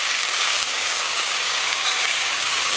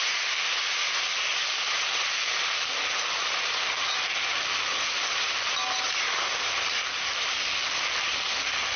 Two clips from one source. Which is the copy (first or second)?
first